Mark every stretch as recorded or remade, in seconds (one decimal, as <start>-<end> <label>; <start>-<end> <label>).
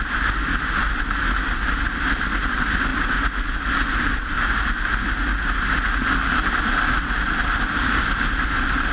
0.0-8.9 recorded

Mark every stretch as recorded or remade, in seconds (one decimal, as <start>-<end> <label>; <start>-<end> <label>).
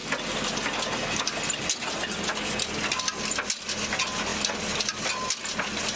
0.0-6.0 recorded